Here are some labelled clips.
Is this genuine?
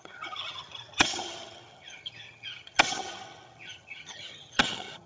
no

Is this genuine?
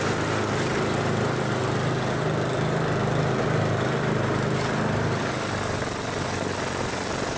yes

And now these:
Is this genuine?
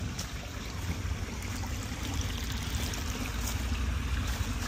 yes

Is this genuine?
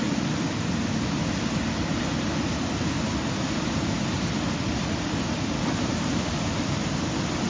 yes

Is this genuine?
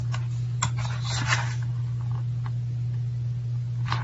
yes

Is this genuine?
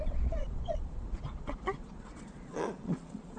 no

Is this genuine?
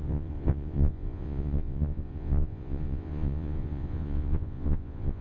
no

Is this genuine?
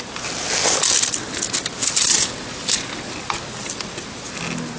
yes